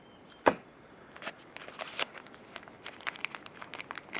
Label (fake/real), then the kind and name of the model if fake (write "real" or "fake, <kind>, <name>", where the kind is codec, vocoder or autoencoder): real